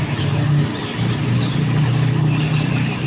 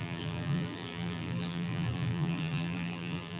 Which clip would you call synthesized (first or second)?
second